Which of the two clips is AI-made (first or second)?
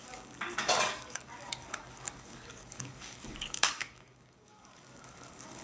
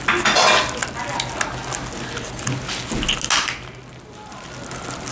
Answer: first